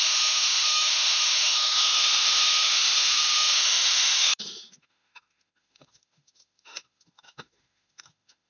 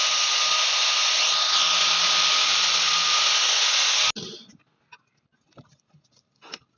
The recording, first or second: second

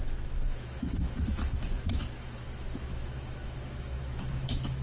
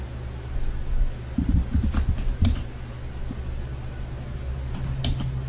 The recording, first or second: second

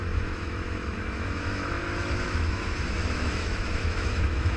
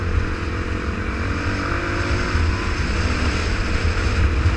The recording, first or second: second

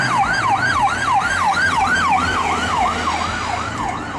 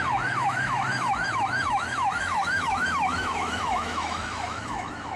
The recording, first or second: first